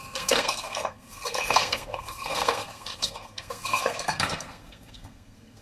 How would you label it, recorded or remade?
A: remade